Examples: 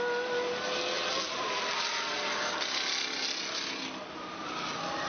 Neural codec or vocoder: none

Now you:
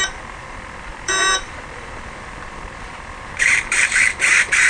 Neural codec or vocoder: vocoder, BigVGAN v2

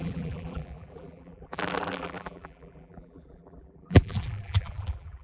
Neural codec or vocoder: vocoder, BigVGAN v2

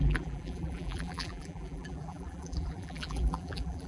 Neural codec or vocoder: vocoder, BigVGAN v2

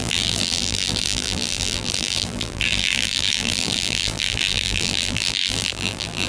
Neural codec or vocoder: vocoder, BigVGAN v2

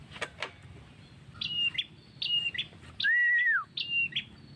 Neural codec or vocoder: none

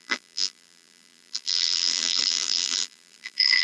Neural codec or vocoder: vocoder, BigVGAN v2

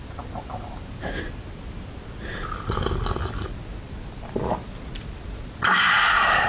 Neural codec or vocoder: none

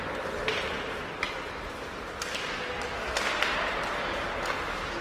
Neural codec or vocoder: none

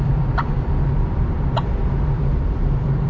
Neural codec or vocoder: vocoder, BigVGAN v2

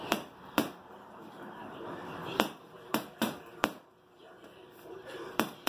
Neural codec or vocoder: vocoder, BigVGAN v2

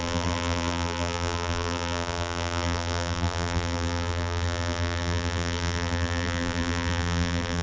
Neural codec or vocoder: vocoder, BigVGAN v2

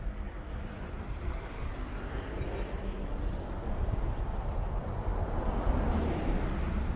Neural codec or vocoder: vocoder, BigVGAN v2